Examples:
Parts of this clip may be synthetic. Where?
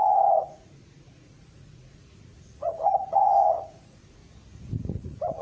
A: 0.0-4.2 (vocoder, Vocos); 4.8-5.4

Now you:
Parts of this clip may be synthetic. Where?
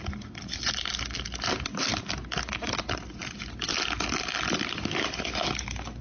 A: none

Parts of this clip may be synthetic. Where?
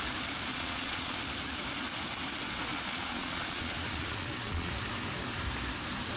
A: 0.5-1.2 (vocoder, Vocos); 2.7-4.7